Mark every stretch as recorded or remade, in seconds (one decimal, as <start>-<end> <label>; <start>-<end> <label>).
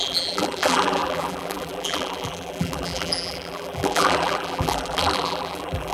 0.0-5.9 remade